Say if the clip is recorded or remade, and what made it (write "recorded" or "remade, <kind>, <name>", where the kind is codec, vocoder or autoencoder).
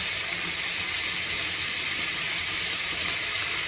recorded